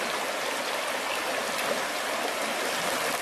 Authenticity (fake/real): real